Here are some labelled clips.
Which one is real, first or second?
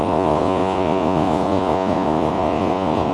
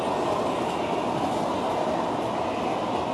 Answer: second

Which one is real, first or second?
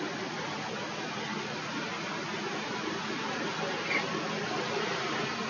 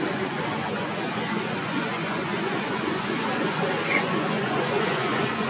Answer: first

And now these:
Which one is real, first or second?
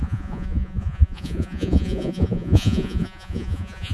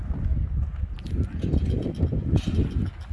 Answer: second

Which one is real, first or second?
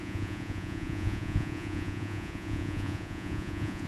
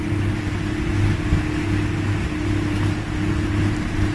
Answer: second